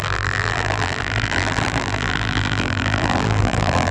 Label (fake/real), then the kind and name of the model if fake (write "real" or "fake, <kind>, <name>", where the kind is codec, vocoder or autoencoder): fake, vocoder, BigVGAN v2